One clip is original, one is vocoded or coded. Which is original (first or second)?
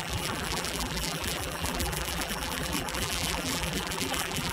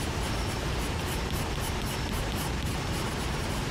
second